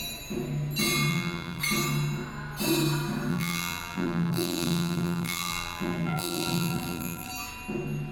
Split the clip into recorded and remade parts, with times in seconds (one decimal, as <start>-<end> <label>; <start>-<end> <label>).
0.0-1.1 recorded; 1.1-1.6 remade; 1.6-3.3 recorded; 3.3-7.3 remade; 7.3-8.1 recorded